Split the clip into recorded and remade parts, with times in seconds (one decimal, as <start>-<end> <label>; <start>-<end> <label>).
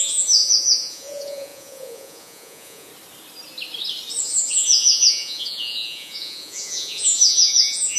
0.0-2.9 remade; 2.9-4.2 recorded; 4.2-8.0 remade